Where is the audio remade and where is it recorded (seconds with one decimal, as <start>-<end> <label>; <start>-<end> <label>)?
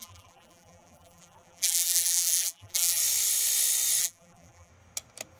0.0-3.0 remade; 3.0-4.0 recorded; 4.0-4.7 remade; 4.7-5.4 recorded